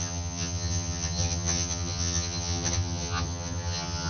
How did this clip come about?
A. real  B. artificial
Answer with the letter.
B